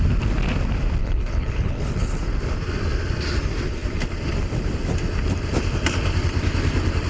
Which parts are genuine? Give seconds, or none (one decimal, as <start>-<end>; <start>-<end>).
0.0-1.0; 2.2-7.1